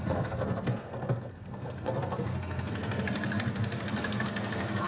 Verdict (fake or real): fake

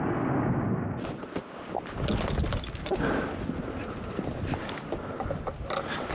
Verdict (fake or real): real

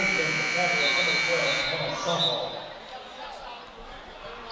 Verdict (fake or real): real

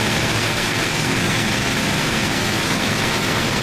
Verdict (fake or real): fake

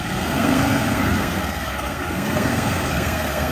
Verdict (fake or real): fake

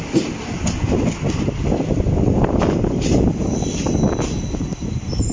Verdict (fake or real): real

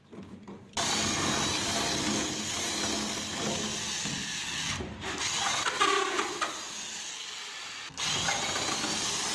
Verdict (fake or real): real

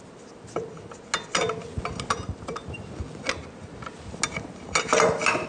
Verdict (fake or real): real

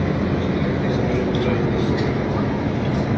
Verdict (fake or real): real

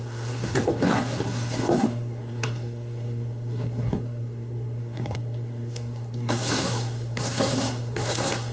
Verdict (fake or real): fake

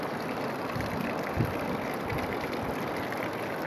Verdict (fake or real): real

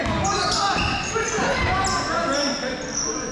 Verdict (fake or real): real